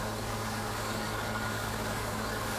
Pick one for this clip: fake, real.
fake